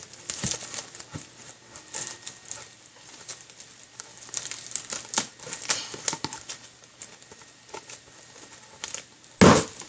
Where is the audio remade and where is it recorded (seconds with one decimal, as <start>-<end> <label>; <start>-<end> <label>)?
0.0-9.9 recorded